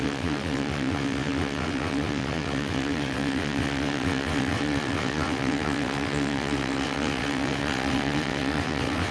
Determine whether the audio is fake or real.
fake